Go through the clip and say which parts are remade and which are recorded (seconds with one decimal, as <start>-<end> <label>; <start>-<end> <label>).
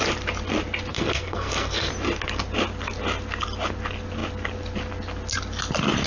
0.0-0.9 recorded; 0.9-1.9 remade; 1.9-6.1 recorded